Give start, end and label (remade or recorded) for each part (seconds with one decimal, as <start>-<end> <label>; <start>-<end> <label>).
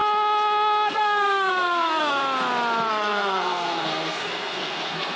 0.0-0.9 recorded; 0.9-2.2 remade; 2.2-2.9 recorded; 2.9-5.2 remade